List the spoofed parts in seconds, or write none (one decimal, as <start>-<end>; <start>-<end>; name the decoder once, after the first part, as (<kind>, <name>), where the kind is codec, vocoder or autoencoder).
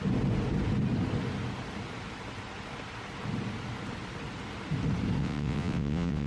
5.2-6.3 (vocoder, WaveNeXt)